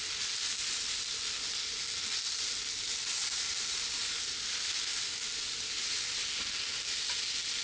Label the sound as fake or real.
real